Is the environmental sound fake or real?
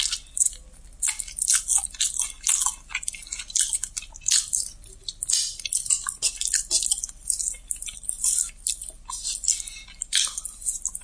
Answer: real